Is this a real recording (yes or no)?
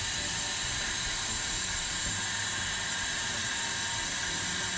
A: yes